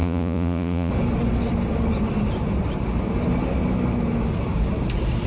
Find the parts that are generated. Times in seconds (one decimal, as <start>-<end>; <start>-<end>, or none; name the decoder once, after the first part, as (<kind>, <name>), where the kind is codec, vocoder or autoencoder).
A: 0.0-0.9 (vocoder, Vocos)